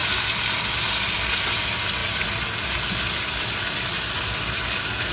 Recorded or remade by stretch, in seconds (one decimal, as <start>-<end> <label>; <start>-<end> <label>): 0.0-5.1 recorded